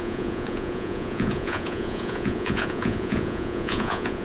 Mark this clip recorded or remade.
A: remade